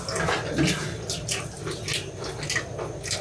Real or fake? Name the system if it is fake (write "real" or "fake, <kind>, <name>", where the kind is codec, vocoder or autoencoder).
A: real